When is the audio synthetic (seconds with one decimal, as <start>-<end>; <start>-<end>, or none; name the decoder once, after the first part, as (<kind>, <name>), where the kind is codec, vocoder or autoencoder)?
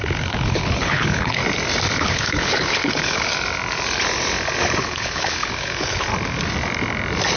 0.0-1.4 (codec, HILCodec); 2.0-3.3; 4.8-6.1